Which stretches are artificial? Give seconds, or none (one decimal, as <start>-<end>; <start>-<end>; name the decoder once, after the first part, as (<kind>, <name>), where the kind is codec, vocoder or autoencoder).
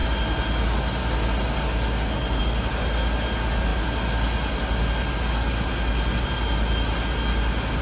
none